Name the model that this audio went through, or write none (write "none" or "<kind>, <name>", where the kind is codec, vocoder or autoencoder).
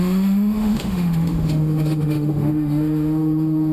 autoencoder, DAC-VAE